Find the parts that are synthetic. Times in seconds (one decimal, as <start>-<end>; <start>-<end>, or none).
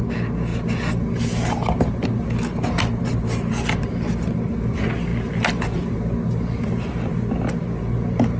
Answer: none